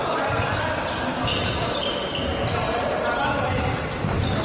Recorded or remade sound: recorded